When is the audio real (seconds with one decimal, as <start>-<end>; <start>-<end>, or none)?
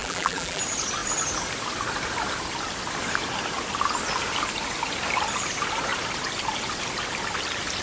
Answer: 0.6-7.8